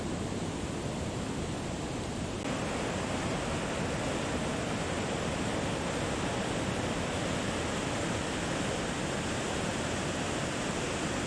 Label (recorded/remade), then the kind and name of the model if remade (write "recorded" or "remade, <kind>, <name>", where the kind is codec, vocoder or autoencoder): recorded